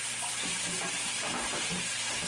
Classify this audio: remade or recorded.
recorded